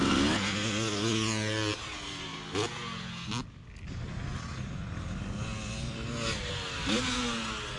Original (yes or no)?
yes